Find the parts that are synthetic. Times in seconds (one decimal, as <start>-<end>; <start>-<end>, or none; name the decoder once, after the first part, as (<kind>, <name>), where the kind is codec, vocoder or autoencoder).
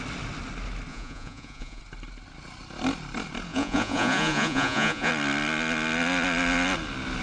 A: 0.9-1.8 (vocoder, Vocos); 3.5-5.1